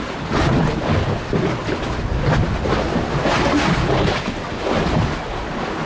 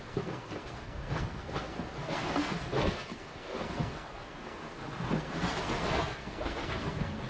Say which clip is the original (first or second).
first